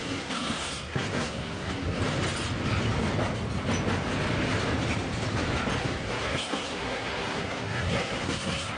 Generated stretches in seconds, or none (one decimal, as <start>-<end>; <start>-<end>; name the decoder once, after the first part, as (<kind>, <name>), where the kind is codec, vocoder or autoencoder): 0.0-2.0 (codec, SNAC); 5.8-8.8